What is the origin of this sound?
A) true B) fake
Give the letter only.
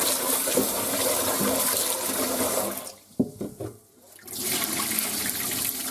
A